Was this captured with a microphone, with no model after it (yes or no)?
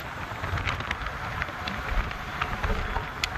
yes